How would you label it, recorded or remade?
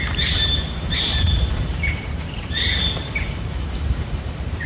remade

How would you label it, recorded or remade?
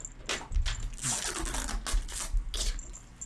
recorded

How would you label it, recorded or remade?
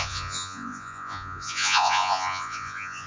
remade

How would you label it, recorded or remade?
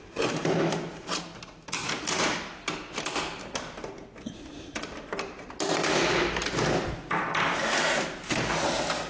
recorded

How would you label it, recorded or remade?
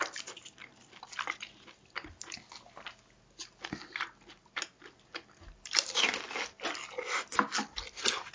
recorded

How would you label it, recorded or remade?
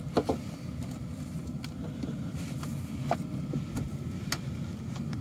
recorded